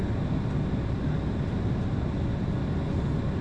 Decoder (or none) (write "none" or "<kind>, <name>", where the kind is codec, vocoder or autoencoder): none